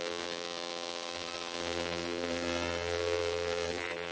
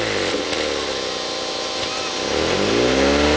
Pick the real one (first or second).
second